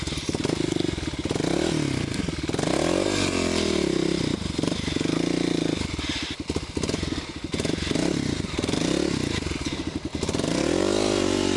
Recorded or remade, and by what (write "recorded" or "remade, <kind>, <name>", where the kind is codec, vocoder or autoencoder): recorded